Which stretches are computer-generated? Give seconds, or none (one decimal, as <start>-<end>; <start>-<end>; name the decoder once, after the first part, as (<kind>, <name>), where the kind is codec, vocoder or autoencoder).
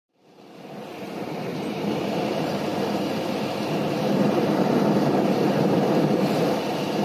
0.0-2.7 (vocoder, BigVGAN v2); 4.0-7.0